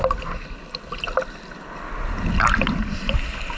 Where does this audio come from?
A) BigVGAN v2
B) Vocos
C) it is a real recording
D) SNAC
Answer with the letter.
C